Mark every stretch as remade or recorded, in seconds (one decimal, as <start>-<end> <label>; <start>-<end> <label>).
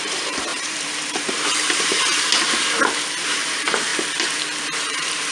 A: 0.0-2.3 remade; 2.3-3.2 recorded; 3.2-3.9 remade; 3.9-4.8 recorded; 4.8-5.3 remade